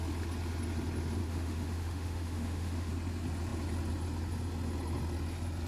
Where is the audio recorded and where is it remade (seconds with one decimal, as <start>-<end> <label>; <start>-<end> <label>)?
0.0-1.2 recorded; 1.2-2.9 remade; 2.9-5.7 recorded